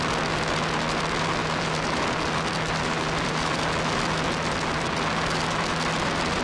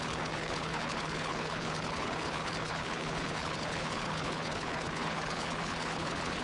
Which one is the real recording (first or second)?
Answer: first